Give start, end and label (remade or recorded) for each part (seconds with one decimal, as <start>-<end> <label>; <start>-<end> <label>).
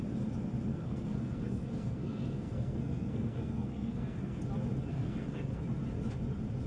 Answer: 0.0-0.7 recorded; 0.7-4.4 remade; 4.4-4.9 recorded; 4.9-5.6 remade; 5.6-6.7 recorded